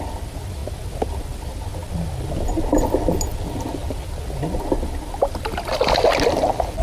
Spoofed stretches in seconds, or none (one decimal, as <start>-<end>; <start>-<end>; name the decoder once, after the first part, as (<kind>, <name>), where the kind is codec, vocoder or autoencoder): none